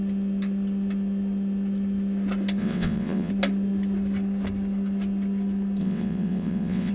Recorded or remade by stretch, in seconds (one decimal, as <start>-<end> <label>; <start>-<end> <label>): 0.0-2.6 recorded; 2.6-3.3 remade; 3.3-5.8 recorded; 5.8-6.9 remade